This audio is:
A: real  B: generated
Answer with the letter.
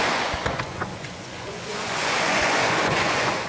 B